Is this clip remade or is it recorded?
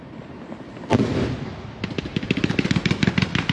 recorded